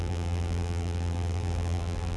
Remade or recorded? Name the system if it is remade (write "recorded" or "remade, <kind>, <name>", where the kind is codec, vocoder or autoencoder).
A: remade, vocoder, BigVGAN v2